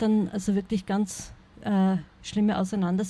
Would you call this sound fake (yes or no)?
no